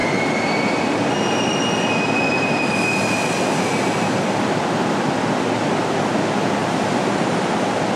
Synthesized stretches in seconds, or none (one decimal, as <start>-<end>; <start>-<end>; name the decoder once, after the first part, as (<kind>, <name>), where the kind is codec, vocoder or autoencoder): none

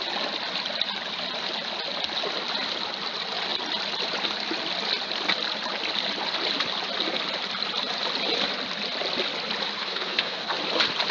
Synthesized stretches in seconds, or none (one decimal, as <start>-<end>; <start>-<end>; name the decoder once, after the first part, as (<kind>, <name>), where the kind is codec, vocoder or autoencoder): 9.8-10.5 (codec, SNAC)

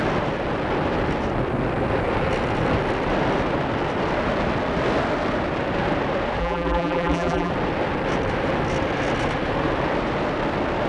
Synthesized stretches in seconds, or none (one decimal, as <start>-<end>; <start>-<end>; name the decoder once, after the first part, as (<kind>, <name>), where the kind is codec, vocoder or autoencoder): 6.4-7.5 (vocoder, BigVGAN v2)

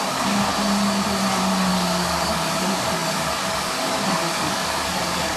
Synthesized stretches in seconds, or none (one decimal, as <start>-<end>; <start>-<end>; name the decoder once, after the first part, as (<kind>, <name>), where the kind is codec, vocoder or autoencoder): 0.0-0.5 (codec, DAC); 1.7-5.4